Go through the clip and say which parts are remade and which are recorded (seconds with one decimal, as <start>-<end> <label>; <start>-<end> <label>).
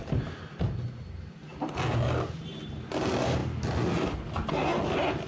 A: 0.0-5.3 recorded